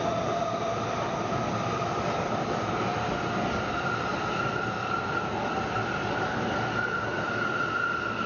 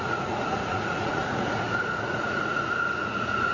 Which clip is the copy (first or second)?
second